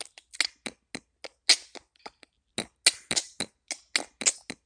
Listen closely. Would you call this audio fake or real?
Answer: real